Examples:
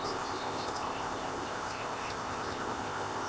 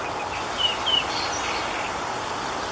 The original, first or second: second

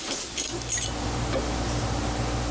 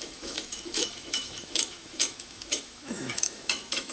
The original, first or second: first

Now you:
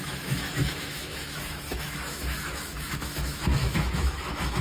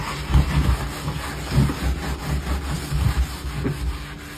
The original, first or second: second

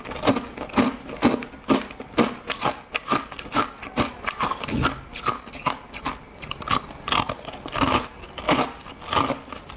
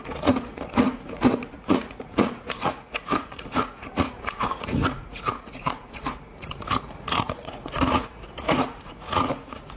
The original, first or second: first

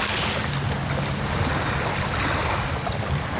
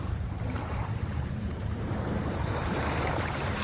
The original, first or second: first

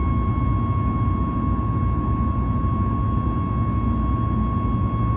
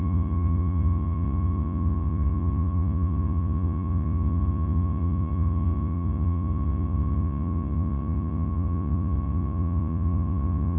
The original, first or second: first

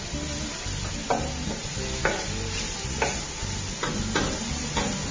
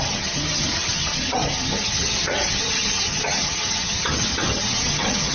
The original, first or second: first